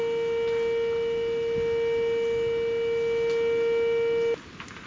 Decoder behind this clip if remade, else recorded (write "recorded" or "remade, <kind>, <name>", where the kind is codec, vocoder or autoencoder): recorded